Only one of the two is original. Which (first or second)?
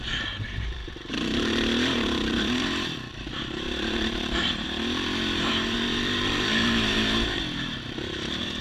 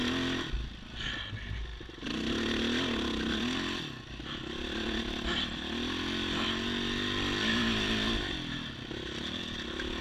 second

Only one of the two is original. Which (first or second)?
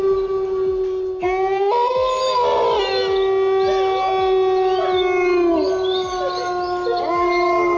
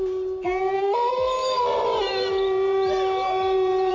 first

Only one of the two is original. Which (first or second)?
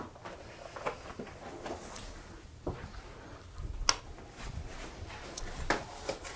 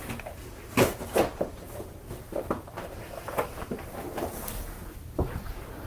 first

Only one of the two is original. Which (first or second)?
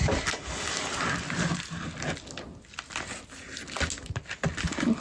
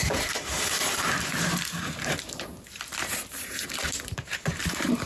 first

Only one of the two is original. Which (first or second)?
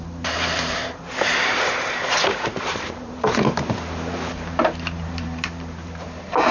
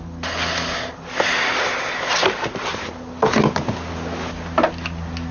second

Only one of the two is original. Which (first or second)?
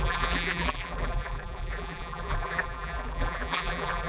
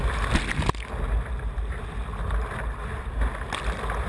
second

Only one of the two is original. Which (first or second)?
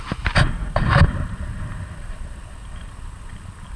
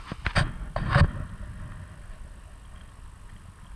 second